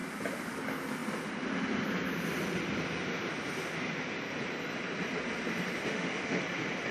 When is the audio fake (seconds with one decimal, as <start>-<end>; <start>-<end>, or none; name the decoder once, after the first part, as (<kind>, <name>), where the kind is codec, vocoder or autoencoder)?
5.9-6.4 (autoencoder, DAC-VAE)